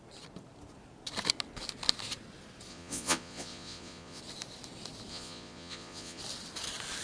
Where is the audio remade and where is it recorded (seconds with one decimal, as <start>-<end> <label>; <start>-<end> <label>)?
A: 0.0-2.7 recorded; 2.7-4.2 remade; 4.2-5.1 recorded; 5.1-6.2 remade; 6.2-7.0 recorded

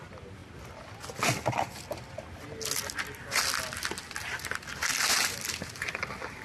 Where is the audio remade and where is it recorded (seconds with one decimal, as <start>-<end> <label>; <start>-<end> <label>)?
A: 0.0-6.4 recorded

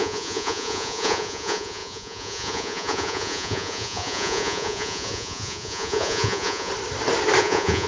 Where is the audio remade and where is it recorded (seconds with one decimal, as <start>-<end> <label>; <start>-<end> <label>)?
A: 0.0-6.7 remade; 6.7-7.4 recorded; 7.4-7.9 remade

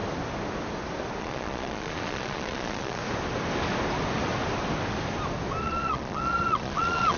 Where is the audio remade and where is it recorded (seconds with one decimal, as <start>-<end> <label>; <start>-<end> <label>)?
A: 0.0-1.2 recorded; 1.2-3.0 remade; 3.0-5.6 recorded; 5.6-7.2 remade

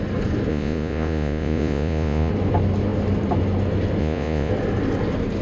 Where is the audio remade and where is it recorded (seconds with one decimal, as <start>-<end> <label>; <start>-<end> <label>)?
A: 0.0-0.5 recorded; 0.5-2.3 remade; 2.3-4.0 recorded; 4.0-4.5 remade; 4.5-5.4 recorded

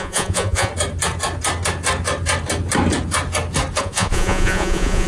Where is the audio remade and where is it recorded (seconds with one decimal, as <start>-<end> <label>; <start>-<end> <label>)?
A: 0.0-0.7 remade; 0.7-3.8 recorded; 3.8-5.1 remade

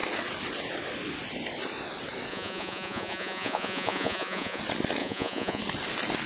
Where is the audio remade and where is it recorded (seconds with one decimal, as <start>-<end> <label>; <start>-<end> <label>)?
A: 0.0-2.3 recorded; 2.3-4.6 remade; 4.6-5.0 recorded; 5.0-5.6 remade; 5.6-6.3 recorded